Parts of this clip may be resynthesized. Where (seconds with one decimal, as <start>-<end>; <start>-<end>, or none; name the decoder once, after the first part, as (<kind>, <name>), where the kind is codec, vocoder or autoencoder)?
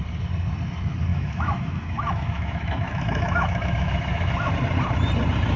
1.1-4.5 (autoencoder, DAC-VAE)